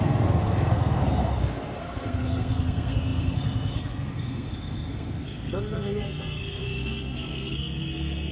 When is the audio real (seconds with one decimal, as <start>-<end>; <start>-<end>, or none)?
none